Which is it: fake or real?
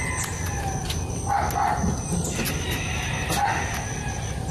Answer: real